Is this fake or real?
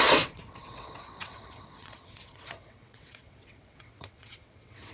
fake